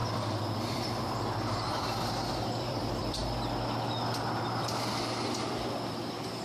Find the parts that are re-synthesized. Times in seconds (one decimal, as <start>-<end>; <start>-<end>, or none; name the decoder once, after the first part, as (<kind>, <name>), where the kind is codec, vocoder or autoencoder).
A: 0.0-3.2 (vocoder, BigVGAN v2); 5.9-6.4